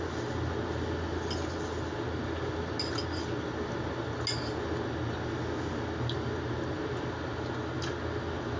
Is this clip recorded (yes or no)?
yes